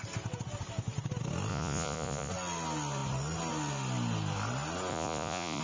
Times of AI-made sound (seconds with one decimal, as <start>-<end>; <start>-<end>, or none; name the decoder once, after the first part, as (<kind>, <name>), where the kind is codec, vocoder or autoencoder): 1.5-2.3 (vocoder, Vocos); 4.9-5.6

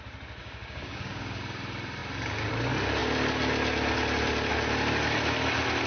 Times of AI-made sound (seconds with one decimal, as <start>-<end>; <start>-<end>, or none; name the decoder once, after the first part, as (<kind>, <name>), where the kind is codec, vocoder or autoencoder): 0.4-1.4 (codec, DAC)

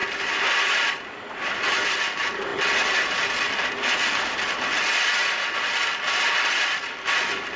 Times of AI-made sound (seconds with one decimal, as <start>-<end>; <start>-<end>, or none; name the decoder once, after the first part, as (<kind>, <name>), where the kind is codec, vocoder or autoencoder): none

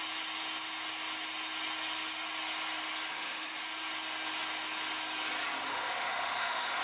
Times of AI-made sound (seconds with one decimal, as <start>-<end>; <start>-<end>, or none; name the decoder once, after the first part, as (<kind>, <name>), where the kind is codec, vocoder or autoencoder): 3.1-3.6 (autoencoder, DAC-VAE); 5.7-6.8

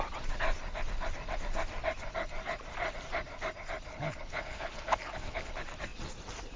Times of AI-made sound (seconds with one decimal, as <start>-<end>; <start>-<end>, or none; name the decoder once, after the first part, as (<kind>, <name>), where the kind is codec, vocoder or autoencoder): 3.9-5.5 (codec, HILCodec)

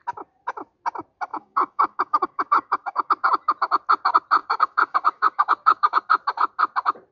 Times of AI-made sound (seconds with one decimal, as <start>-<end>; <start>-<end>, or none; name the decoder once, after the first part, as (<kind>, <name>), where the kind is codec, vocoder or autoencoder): 1.3-3.1 (codec, DAC); 4.4-6.1

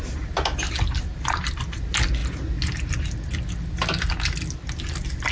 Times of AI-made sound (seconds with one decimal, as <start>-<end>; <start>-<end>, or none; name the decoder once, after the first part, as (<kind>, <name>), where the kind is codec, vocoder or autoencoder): none

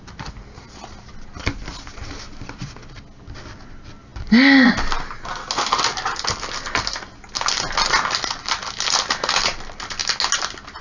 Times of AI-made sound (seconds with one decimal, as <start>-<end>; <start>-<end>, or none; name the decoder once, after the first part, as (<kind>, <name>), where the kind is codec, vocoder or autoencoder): none